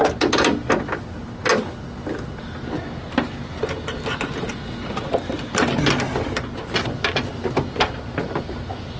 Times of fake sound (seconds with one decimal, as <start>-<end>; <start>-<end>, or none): none